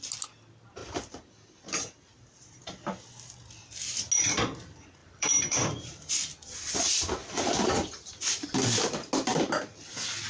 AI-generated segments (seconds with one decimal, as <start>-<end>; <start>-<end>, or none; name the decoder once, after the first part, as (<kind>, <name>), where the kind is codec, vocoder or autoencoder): 0.8-2.6 (vocoder, BigVGAN v2); 5.0-6.1; 7.2-8.2; 9.3-9.9